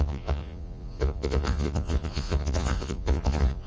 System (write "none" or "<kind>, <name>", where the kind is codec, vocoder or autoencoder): vocoder, Vocos